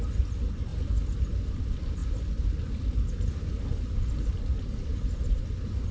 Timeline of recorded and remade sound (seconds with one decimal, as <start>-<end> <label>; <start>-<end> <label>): 0.0-5.9 recorded